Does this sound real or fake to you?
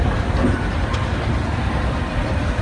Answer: fake